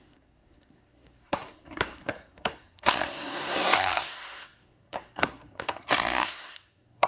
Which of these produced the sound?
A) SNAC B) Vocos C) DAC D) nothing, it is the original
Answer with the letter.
A